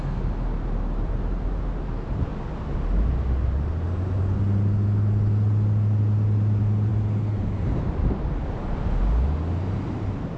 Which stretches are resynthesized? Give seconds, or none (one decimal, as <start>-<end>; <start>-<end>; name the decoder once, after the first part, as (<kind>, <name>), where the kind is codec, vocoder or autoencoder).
none